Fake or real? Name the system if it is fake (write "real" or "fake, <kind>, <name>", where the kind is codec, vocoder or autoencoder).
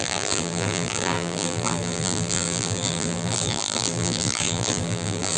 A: fake, vocoder, BigVGAN v2